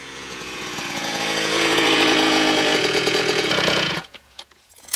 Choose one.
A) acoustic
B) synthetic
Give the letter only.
B